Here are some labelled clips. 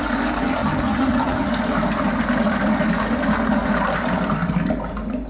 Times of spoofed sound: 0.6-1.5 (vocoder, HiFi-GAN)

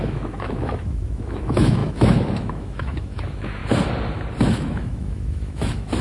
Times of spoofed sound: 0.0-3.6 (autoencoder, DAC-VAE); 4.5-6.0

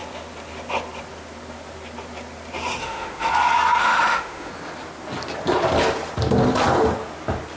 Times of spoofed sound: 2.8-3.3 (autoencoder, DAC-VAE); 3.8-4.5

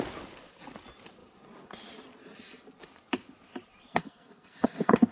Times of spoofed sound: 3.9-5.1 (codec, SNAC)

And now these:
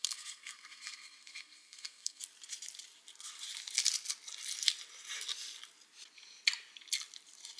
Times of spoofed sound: 0.0-2.2 (codec, SNAC)

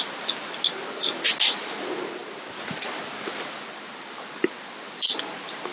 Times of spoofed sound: none